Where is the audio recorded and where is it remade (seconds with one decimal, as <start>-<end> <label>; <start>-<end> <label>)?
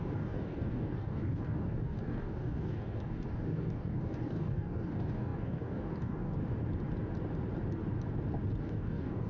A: 0.0-6.4 remade; 6.4-8.6 recorded; 8.6-9.3 remade